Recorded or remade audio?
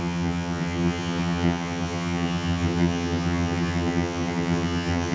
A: remade